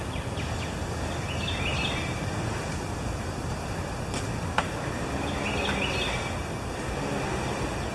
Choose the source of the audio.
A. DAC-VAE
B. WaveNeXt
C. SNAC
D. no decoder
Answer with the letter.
D